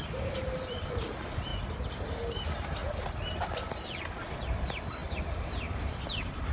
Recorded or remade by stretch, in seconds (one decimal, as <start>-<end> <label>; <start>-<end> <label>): 0.0-1.5 remade; 1.5-2.0 recorded; 2.0-2.8 remade; 2.8-3.6 recorded; 3.6-6.5 remade